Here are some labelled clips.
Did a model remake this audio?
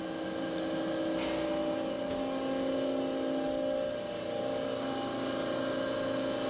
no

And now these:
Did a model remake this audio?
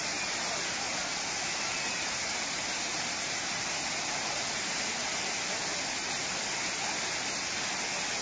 no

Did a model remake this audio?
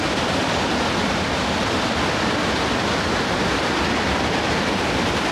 no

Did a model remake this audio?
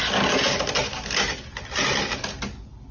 no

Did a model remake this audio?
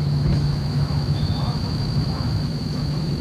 yes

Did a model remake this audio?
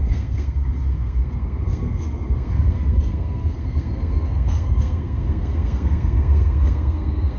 yes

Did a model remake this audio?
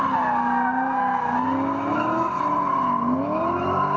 no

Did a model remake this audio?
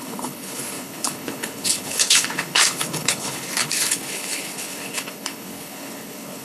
yes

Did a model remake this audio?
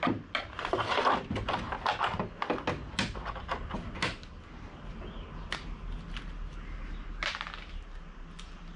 no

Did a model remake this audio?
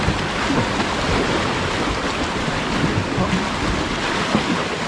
no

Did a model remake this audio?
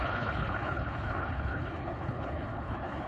yes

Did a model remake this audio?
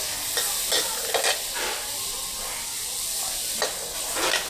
no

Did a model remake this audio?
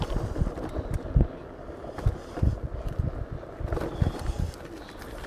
no